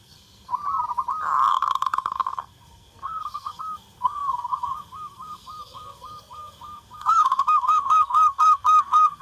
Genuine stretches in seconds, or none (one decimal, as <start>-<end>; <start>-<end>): 0.5-1.5